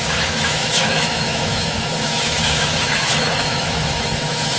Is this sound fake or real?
fake